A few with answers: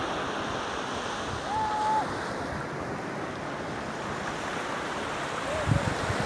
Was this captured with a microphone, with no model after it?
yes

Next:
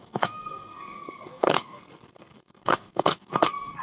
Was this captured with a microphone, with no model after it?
no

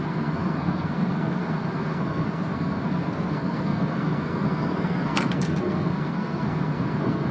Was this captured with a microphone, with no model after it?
no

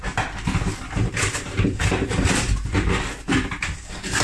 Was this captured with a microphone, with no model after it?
yes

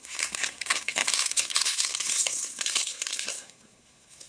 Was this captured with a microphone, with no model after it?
no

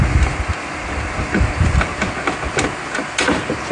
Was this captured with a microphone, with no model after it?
yes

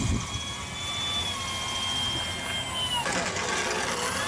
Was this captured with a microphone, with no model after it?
yes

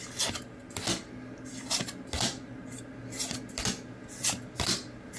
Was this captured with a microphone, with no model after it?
yes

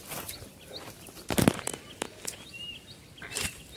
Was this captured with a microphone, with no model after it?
yes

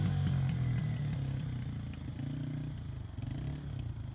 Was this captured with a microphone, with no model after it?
yes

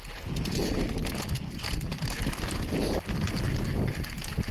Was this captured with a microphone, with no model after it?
yes